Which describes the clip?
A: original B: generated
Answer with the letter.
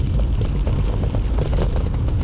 A